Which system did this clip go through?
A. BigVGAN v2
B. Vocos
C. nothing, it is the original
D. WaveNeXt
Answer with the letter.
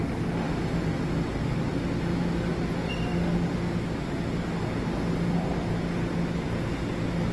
C